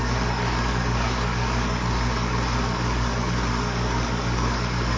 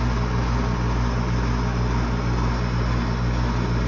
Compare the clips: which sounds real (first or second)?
second